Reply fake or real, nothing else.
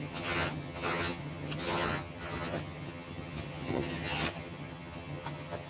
fake